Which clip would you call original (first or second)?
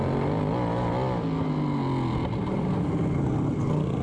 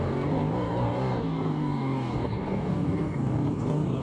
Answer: first